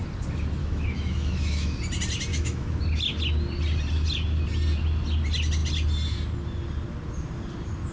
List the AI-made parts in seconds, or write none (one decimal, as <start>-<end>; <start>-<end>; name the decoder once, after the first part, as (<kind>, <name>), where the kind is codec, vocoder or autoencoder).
0.6-1.8 (autoencoder, DAC-VAE); 2.3-2.8